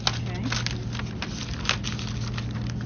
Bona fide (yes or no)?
yes